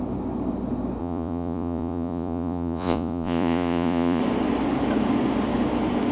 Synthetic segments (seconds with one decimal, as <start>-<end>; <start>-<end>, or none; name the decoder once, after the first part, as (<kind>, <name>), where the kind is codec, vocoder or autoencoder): 1.0-4.2 (vocoder, Vocos)